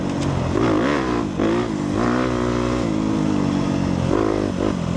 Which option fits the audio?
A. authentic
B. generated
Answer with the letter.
A